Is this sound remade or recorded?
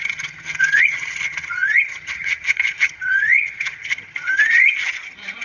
remade